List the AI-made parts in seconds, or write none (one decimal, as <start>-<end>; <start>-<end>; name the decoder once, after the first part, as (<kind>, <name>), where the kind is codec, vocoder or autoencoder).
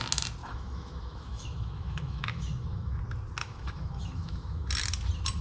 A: 0.4-3.0 (autoencoder, DAC-VAE); 3.4-4.7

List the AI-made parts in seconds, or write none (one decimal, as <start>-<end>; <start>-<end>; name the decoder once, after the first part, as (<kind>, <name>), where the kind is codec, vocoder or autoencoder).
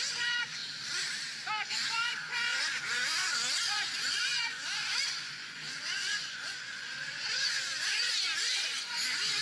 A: 0.0-0.6 (vocoder, Vocos); 1.7-9.4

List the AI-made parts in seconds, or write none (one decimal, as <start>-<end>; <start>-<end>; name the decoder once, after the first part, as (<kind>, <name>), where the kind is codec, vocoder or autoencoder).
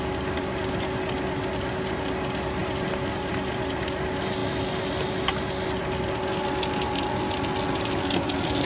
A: none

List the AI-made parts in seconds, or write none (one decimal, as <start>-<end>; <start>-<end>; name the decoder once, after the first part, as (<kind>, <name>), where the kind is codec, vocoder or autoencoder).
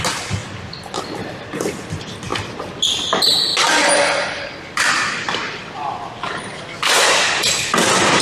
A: none